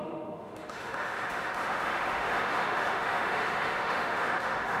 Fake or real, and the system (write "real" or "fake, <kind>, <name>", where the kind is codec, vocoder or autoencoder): fake, autoencoder, DAC-VAE